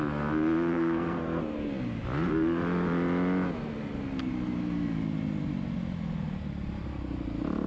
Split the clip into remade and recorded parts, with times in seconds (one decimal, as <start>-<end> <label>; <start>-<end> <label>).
0.0-0.7 recorded; 0.7-1.4 remade; 1.4-7.7 recorded